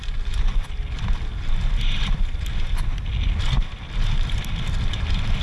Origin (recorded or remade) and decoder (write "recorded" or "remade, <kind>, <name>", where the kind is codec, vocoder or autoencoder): recorded